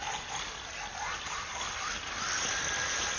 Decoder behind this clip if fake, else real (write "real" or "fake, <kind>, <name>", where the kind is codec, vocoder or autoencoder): real